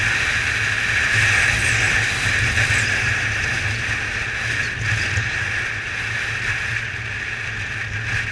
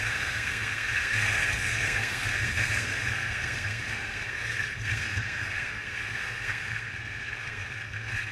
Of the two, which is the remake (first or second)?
second